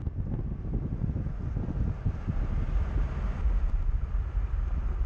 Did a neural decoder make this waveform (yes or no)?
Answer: no